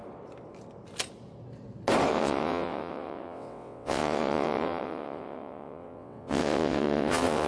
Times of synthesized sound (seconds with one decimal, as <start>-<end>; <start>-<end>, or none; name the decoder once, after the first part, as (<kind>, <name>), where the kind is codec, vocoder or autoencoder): 2.1-7.5 (vocoder, WaveNeXt)